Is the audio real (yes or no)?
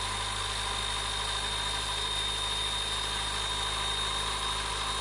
yes